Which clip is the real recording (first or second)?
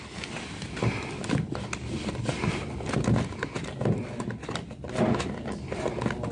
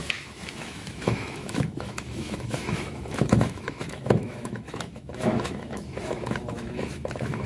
first